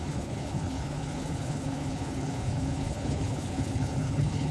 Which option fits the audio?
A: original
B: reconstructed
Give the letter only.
B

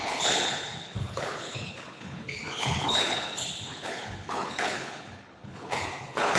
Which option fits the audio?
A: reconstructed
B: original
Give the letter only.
A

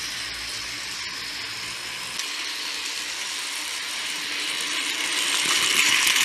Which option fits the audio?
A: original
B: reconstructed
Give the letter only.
A